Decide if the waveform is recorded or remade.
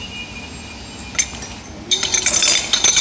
recorded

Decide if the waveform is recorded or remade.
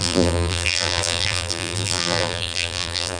remade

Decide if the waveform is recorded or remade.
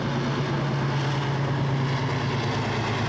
recorded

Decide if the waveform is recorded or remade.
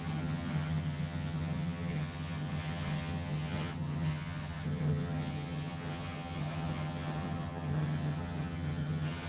remade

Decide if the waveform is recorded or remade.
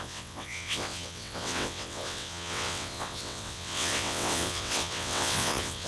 remade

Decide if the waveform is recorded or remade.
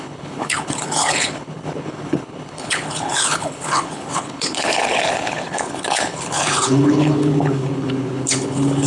remade